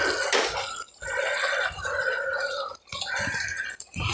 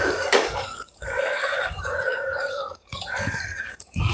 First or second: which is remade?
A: second